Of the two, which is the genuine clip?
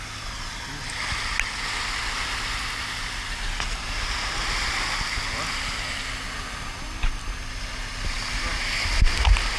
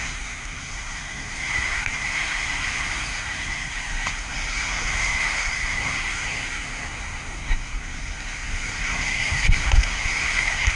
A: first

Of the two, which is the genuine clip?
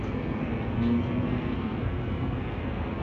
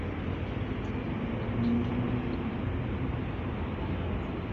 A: second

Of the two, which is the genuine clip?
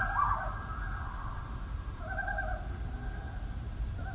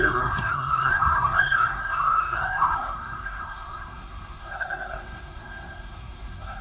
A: first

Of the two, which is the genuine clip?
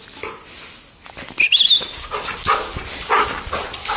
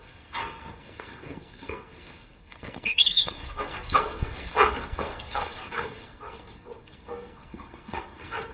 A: first